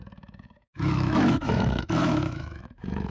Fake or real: fake